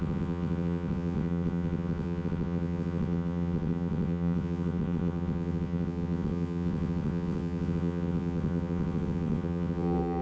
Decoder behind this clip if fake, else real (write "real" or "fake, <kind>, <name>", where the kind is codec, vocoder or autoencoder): fake, vocoder, WaveNeXt